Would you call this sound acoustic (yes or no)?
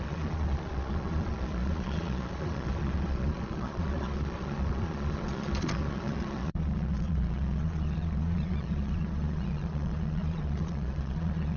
no